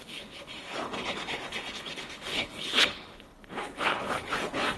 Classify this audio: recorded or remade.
remade